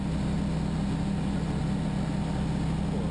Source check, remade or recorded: recorded